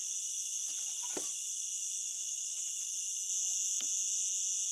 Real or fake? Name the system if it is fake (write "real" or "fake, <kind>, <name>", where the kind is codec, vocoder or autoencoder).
real